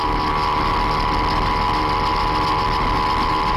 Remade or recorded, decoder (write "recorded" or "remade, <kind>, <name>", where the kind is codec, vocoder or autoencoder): recorded